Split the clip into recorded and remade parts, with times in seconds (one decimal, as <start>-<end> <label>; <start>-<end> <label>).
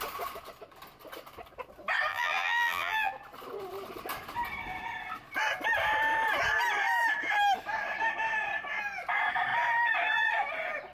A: 0.0-2.1 recorded; 2.1-3.1 remade; 3.1-10.9 recorded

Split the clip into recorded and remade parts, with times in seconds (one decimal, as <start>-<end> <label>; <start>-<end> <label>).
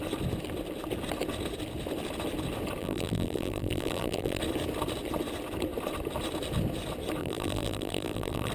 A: 0.0-2.8 recorded; 2.8-4.4 remade; 4.4-7.2 recorded; 7.2-8.5 remade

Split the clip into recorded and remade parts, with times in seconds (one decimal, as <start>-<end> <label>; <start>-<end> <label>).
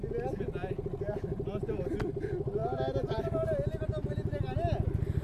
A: 0.0-5.2 recorded